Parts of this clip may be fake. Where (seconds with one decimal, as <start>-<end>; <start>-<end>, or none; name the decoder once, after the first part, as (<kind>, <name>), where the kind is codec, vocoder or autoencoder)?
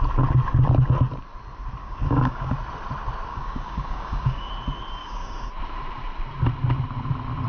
1.8-2.5 (codec, DAC); 3.3-4.5; 5.0-5.5